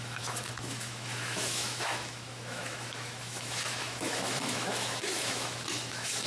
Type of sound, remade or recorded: remade